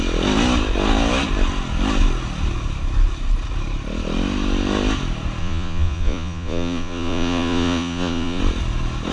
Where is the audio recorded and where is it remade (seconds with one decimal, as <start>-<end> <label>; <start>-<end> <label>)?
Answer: 0.0-5.4 recorded; 5.4-8.4 remade; 8.4-9.1 recorded

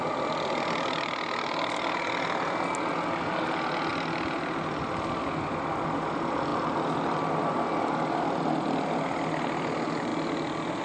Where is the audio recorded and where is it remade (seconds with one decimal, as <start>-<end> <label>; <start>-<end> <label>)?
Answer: 0.0-10.8 recorded

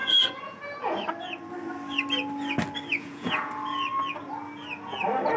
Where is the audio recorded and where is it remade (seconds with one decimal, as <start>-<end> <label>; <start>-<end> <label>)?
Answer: 0.0-0.6 remade; 0.6-2.9 recorded; 2.9-3.5 remade; 3.5-5.4 recorded

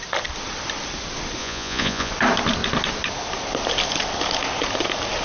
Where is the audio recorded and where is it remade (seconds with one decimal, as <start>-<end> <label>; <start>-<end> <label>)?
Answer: 0.0-1.4 recorded; 1.4-2.1 remade; 2.1-5.2 recorded